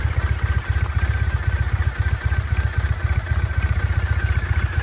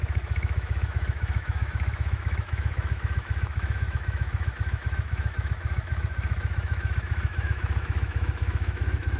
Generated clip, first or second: second